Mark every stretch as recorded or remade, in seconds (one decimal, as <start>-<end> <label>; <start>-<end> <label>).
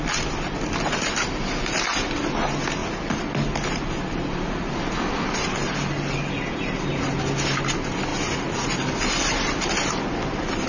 0.0-10.7 recorded